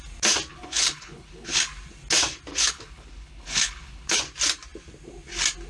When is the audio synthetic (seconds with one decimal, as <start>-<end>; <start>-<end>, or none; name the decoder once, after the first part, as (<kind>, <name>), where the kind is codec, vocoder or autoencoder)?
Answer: 0.5-1.6 (codec, HILCodec); 2.5-4.2